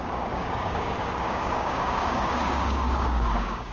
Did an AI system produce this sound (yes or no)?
yes